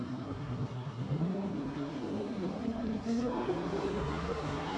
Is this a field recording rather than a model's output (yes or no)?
no